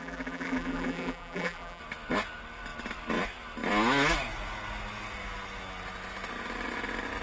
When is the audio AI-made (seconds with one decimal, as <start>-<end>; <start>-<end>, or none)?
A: 0.0-1.8